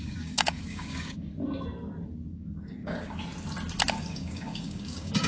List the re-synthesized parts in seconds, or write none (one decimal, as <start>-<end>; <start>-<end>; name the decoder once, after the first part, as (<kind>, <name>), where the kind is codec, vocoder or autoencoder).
0.0-1.3 (codec, DAC); 2.3-3.2; 3.9-5.3